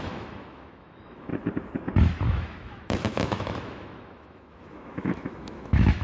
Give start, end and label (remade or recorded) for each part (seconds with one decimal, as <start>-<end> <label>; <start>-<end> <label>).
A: 0.0-1.3 remade; 1.3-2.0 recorded; 2.0-6.0 remade